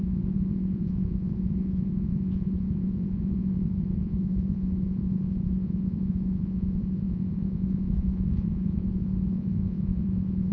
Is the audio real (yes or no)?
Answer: no